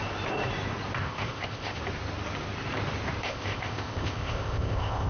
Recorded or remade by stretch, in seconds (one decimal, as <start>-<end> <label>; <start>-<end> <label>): 0.0-1.0 recorded; 1.0-1.8 remade; 1.8-3.2 recorded; 3.2-5.1 remade